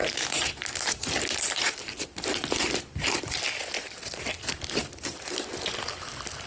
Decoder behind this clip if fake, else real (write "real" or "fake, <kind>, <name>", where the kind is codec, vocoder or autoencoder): real